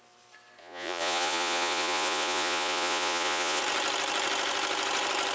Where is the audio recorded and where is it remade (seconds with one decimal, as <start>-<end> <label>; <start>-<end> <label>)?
0.0-0.6 recorded; 0.6-3.6 remade; 3.6-5.3 recorded